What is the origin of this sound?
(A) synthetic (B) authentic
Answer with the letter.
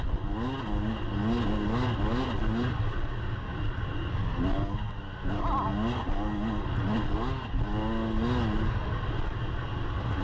B